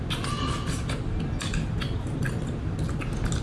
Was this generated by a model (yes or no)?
no